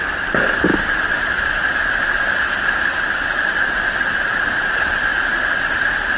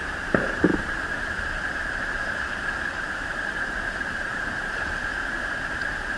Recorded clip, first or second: first